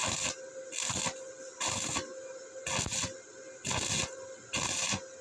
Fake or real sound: real